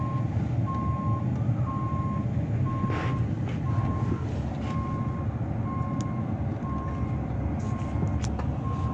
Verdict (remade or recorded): recorded